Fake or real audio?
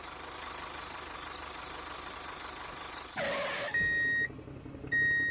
real